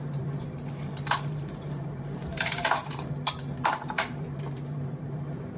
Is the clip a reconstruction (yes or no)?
yes